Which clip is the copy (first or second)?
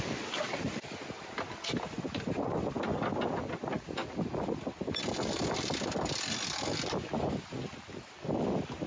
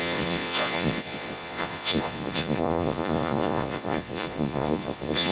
second